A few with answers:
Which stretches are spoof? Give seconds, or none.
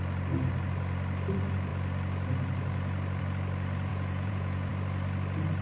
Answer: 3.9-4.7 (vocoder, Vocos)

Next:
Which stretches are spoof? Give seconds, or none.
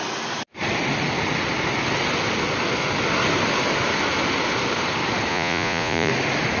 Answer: 5.3-6.1 (vocoder, Vocos)